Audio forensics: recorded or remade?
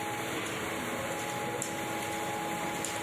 recorded